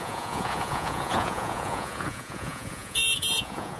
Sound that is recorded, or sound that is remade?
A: remade